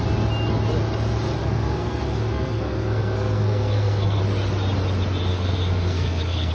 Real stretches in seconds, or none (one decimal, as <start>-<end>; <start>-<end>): 0.0-1.4; 4.2-5.3